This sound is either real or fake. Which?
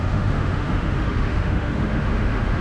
fake